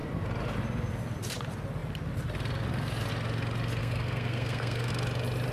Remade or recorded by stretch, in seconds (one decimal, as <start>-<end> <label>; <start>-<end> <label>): 0.0-3.8 recorded; 3.8-4.9 remade; 4.9-5.5 recorded